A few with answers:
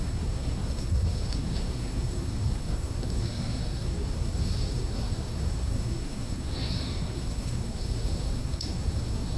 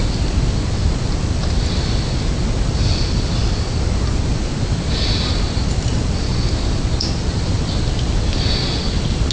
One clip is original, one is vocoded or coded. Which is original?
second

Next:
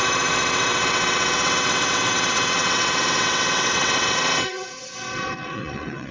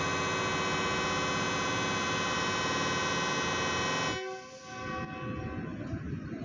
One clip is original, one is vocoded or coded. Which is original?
second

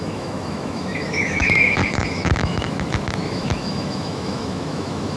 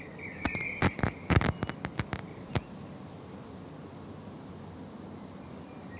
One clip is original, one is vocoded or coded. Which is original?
second